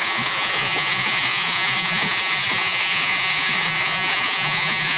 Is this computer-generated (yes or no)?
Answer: yes